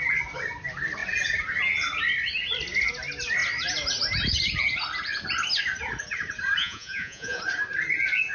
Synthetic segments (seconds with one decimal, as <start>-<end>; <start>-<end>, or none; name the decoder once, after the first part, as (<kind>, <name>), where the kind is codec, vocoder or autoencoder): 6.6-7.4 (vocoder, Vocos)